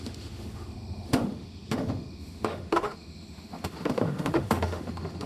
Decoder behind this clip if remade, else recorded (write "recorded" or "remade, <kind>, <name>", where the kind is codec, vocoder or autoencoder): remade, autoencoder, DAC-VAE